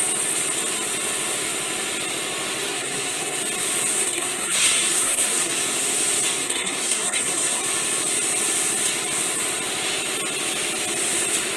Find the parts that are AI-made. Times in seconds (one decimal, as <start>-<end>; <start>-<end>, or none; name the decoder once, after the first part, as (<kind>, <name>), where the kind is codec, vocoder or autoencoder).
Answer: 2.6-3.4 (codec, SNAC); 3.9-5.5; 6.4-7.6